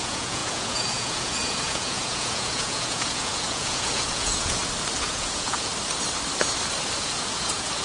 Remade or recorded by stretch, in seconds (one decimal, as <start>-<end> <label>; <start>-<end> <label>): 0.0-4.6 remade; 4.6-5.1 recorded; 5.1-5.7 remade; 5.7-7.0 recorded; 7.0-7.8 remade